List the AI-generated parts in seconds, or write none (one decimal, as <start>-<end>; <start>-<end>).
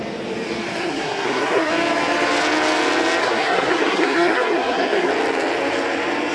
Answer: 0.8-1.7; 3.2-5.1